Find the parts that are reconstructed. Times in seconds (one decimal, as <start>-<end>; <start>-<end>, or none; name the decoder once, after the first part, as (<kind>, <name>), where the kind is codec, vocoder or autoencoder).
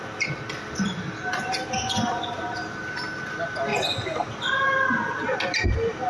none